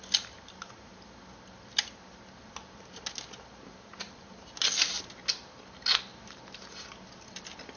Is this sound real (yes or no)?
yes